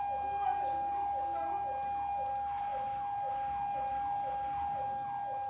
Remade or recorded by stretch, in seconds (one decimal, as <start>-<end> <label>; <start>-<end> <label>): 0.0-5.5 recorded